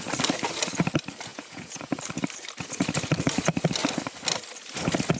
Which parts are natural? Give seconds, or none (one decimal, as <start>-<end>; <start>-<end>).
0.0-1.3; 2.0-5.2